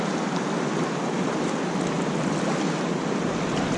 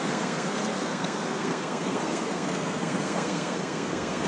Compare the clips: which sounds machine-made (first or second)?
second